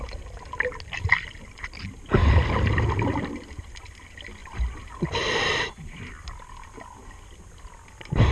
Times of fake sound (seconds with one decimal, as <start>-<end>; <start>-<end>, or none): 4.4-5.7